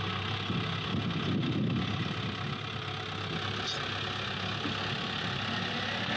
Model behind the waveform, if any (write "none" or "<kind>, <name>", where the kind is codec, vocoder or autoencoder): none